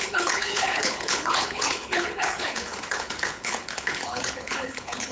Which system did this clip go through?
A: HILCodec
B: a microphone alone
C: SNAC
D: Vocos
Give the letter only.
A